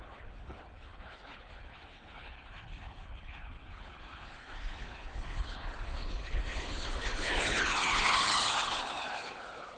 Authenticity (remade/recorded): remade